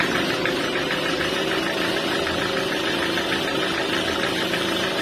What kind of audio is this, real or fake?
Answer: fake